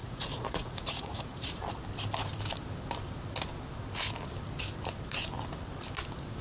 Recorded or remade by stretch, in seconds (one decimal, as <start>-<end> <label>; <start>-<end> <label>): 0.0-1.5 remade; 1.5-6.4 recorded